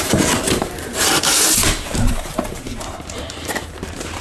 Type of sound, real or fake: fake